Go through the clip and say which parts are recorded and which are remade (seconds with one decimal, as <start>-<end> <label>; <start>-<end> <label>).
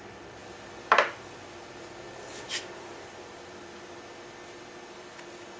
0.0-5.6 recorded